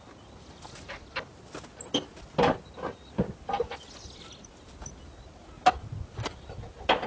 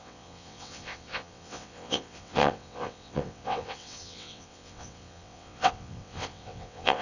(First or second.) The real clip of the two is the first